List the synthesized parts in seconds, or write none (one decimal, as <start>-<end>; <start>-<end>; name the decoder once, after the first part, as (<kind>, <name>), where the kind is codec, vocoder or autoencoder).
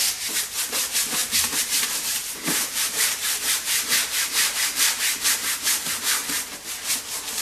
1.2-5.0 (vocoder, BigVGAN v2)